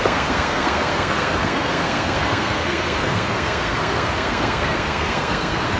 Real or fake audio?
fake